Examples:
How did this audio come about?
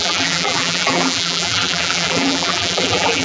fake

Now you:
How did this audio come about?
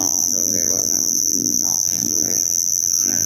fake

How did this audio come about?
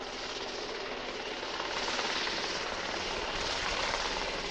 real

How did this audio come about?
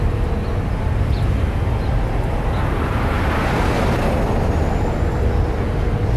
real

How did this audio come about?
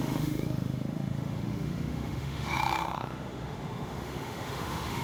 fake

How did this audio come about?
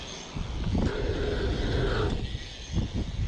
real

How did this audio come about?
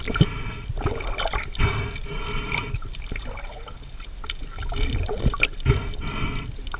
real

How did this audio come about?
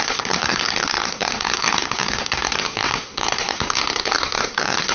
fake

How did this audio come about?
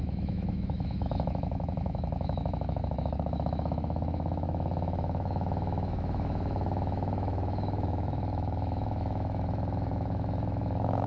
fake